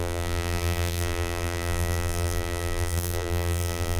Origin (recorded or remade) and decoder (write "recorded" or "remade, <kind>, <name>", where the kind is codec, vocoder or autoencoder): remade, vocoder, BigVGAN v2